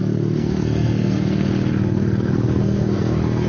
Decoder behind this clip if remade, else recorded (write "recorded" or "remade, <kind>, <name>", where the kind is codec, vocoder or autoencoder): remade, codec, SNAC